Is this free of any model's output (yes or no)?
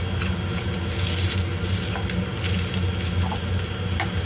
yes